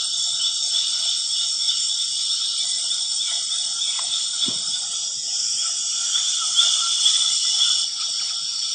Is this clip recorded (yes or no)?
yes